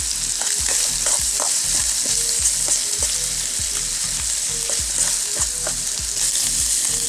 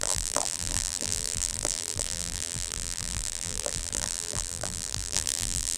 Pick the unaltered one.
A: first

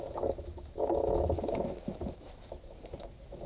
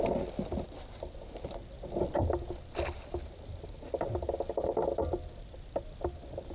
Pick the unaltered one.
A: second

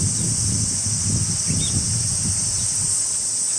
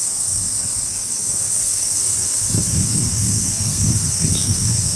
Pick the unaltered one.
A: first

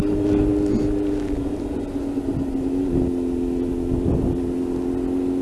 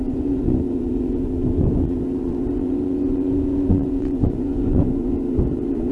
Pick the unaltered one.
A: first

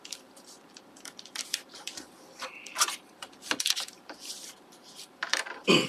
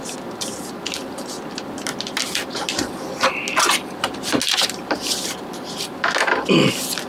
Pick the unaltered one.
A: second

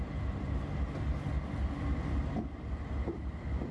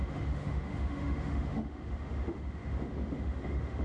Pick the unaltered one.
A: first